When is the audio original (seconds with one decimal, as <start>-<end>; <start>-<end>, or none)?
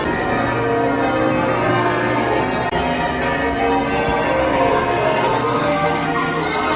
0.0-1.7; 2.4-4.4